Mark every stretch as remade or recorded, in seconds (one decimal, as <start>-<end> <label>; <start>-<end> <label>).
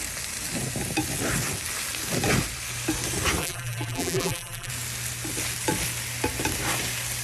0.0-3.4 recorded; 3.4-4.7 remade; 4.7-7.2 recorded